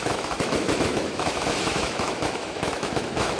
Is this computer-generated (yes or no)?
yes